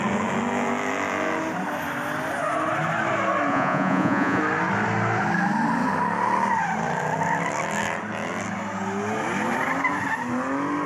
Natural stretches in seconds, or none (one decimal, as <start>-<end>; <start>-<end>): 0.0-3.5; 4.4-10.9